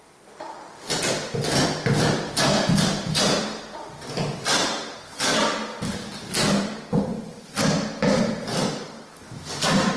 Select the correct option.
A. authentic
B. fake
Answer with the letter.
A